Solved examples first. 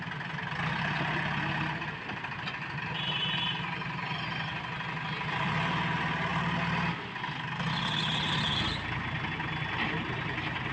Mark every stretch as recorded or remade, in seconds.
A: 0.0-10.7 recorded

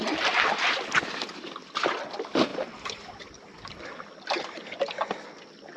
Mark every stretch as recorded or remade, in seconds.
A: 0.0-5.8 recorded

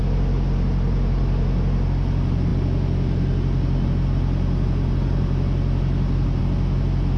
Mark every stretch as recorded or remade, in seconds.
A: 0.0-7.2 recorded

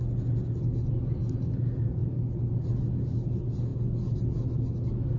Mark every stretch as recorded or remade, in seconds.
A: 0.0-5.2 recorded

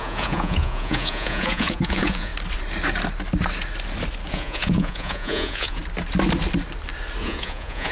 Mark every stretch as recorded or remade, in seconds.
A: 0.0-2.3 remade; 2.3-4.3 recorded; 4.3-5.8 remade; 5.8-7.2 recorded; 7.2-7.9 remade